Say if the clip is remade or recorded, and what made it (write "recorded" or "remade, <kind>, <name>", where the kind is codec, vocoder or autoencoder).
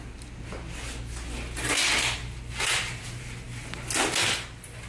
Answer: recorded